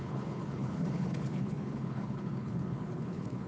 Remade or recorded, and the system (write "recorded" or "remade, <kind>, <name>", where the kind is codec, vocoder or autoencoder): remade, codec, HILCodec